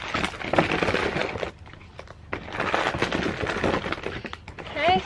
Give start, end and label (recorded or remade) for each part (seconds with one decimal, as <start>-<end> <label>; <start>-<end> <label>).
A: 0.0-5.1 recorded